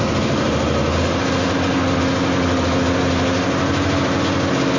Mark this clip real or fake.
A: real